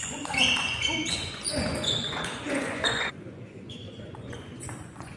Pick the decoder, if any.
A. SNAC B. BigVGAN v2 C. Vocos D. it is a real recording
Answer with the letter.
C